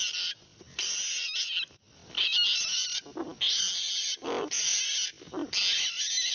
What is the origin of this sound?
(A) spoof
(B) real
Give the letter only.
B